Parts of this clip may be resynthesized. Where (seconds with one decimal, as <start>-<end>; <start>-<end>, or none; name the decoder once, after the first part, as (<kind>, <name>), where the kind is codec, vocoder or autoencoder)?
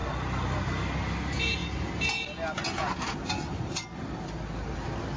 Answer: none